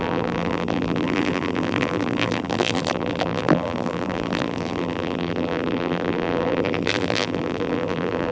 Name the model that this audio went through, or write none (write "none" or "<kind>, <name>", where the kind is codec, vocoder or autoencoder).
vocoder, BigVGAN v2